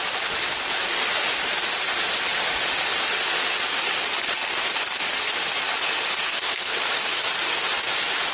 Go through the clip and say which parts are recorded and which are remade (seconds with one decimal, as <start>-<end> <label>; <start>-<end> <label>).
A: 0.0-6.2 recorded; 6.2-6.8 remade; 6.8-8.3 recorded